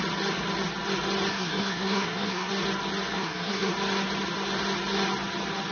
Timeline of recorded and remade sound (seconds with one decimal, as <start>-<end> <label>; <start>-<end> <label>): 0.0-1.3 recorded; 1.3-2.5 remade; 2.5-3.1 recorded; 3.1-3.7 remade; 3.7-5.7 recorded